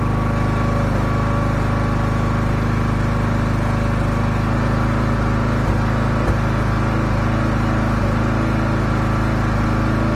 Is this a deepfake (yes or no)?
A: no